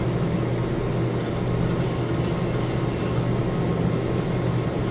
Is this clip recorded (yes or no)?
yes